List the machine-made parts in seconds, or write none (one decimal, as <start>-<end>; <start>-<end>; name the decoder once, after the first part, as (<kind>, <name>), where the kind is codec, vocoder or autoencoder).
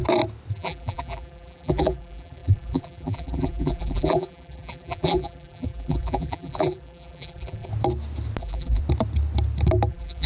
0.5-7.7 (vocoder, BigVGAN v2); 8.4-8.8; 9.9-10.3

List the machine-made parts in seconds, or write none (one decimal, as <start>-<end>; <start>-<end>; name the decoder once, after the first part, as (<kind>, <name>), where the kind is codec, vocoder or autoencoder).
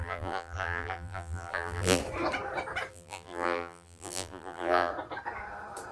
0.0-2.0 (vocoder, BigVGAN v2); 2.9-4.9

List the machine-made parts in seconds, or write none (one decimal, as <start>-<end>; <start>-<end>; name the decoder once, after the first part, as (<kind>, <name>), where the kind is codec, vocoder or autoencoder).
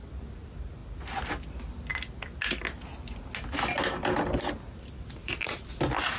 5.2-5.7 (vocoder, BigVGAN v2)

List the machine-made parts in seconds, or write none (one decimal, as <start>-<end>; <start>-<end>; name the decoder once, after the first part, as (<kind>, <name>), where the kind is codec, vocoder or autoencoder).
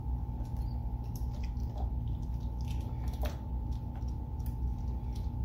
none